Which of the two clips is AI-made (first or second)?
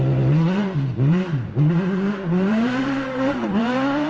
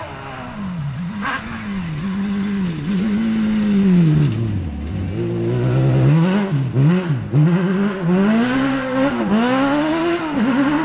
first